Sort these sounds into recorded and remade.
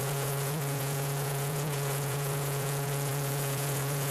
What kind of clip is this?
remade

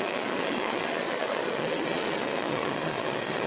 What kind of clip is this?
remade